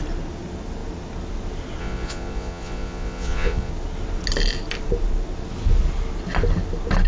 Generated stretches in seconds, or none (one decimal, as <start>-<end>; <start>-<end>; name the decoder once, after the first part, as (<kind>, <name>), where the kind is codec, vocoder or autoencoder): 1.8-3.7 (vocoder, Vocos)

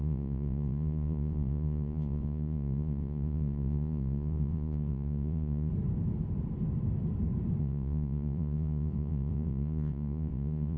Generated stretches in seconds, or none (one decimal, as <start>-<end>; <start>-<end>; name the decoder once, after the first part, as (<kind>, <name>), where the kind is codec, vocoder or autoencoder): 0.0-5.7 (vocoder, Vocos); 7.6-10.8

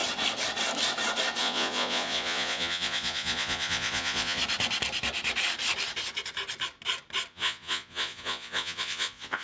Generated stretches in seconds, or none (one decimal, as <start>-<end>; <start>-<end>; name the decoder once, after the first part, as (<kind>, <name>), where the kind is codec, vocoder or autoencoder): 1.4-4.4 (vocoder, Vocos); 7.3-9.4

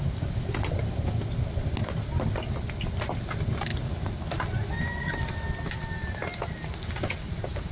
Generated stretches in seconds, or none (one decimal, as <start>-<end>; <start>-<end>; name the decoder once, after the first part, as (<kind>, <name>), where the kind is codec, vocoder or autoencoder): none

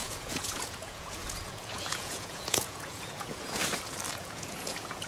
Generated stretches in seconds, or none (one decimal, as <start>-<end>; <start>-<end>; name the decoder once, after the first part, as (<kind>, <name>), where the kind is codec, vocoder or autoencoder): 0.0-3.6 (vocoder, Vocos); 4.1-5.1

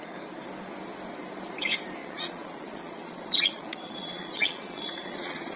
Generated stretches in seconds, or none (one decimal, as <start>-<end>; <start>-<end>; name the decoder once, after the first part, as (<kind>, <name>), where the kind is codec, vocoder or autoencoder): 2.0-5.6 (vocoder, Vocos)